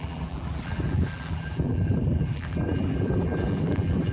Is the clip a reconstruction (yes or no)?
yes